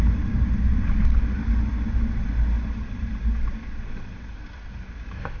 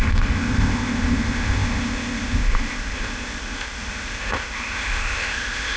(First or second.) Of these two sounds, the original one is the first